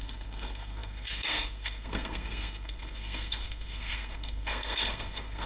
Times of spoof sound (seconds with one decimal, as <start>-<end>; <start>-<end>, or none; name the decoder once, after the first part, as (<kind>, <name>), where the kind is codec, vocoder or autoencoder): 0.0-5.5 (codec, SNAC)